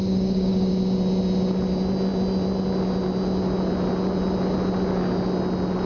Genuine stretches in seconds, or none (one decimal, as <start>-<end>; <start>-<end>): 0.7-5.9